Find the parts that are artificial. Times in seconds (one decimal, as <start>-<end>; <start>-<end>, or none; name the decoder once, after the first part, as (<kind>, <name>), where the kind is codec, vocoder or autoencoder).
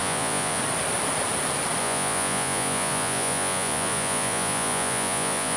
0.0-0.6 (vocoder, Vocos); 1.8-5.6